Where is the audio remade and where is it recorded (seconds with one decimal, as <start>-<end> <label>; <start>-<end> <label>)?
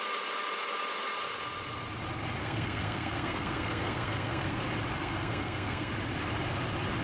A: 0.0-2.4 recorded; 2.4-4.6 remade; 4.6-5.0 recorded; 5.0-5.9 remade; 5.9-7.0 recorded